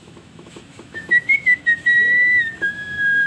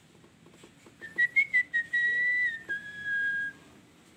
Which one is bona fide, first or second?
second